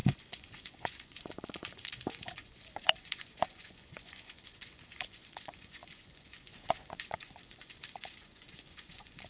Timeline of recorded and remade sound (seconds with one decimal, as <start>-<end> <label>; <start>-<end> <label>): 0.0-9.3 remade